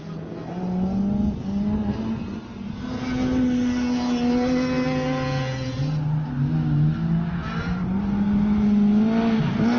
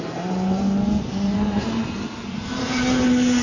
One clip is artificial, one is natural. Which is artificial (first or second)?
second